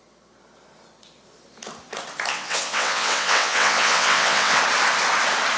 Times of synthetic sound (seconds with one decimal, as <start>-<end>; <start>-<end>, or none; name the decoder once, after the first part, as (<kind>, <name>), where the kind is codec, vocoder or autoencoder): 2.3-4.6 (vocoder, WaveNeXt)